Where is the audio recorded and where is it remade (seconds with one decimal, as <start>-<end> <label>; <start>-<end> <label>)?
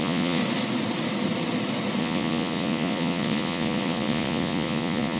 0.0-0.4 remade; 0.4-2.0 recorded; 2.0-5.2 remade